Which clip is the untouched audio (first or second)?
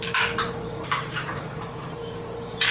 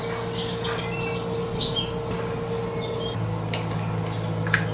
second